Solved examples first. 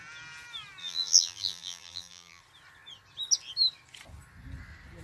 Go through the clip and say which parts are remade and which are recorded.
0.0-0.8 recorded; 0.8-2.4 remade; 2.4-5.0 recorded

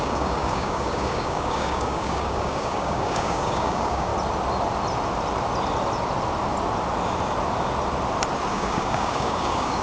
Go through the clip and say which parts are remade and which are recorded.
0.0-4.1 remade; 4.1-8.5 recorded; 8.5-9.8 remade

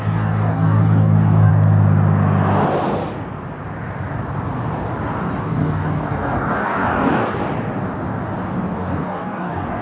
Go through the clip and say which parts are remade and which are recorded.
0.0-1.5 remade; 1.5-5.4 recorded; 5.4-7.4 remade; 7.4-8.7 recorded; 8.7-9.8 remade

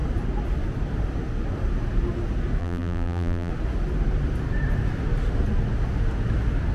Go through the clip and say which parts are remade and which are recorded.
0.0-2.6 recorded; 2.6-3.5 remade; 3.5-6.7 recorded

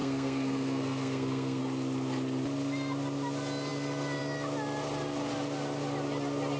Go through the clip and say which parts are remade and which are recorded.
0.0-1.6 remade; 1.6-6.6 recorded

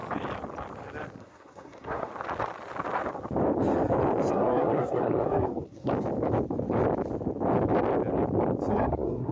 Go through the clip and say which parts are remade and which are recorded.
0.0-1.2 recorded; 1.2-2.1 remade; 2.1-4.3 recorded; 4.3-5.9 remade; 5.9-8.7 recorded; 8.7-9.3 remade

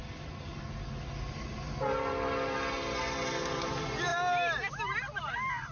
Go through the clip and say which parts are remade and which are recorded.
0.0-5.7 recorded

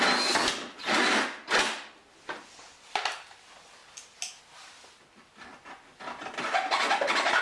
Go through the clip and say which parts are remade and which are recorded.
0.0-7.4 recorded